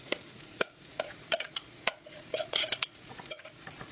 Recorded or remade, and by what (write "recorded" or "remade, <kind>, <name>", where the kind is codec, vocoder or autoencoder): remade, vocoder, Vocos